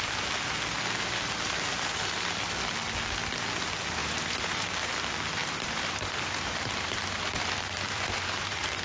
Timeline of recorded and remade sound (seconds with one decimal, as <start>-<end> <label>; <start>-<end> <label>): 0.0-4.0 recorded; 4.0-4.9 remade; 4.9-5.4 recorded; 5.4-8.8 remade

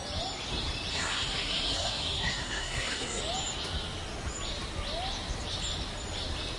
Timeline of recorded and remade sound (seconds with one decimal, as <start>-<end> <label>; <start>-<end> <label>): 0.0-0.9 recorded; 0.9-3.2 remade; 3.2-6.6 recorded

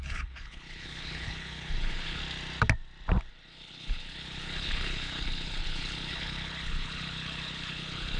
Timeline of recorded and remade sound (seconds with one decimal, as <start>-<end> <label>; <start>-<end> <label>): 0.0-2.2 remade; 2.2-3.3 recorded; 3.3-8.2 remade

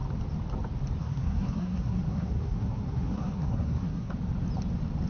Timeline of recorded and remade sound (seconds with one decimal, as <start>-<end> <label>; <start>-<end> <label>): 0.0-1.0 recorded; 1.0-4.1 remade; 4.1-5.1 recorded

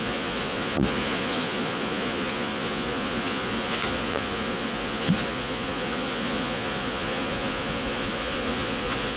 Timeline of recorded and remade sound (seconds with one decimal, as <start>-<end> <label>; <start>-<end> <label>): 0.0-9.2 remade

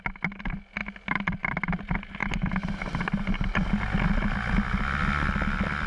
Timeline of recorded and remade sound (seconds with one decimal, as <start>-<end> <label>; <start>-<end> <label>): 0.0-5.9 recorded

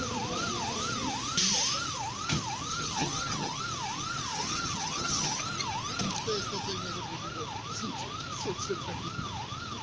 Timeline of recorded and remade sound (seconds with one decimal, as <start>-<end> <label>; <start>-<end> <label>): 0.0-2.7 recorded; 2.7-3.6 remade; 3.6-4.3 recorded; 4.3-5.4 remade; 5.4-9.8 recorded

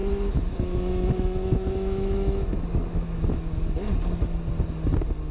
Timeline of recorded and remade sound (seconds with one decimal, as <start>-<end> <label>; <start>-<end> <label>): 0.0-3.2 remade; 3.2-5.3 recorded